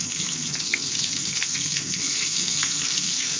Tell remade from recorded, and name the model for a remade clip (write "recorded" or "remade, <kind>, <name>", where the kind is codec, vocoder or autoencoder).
remade, codec, SNAC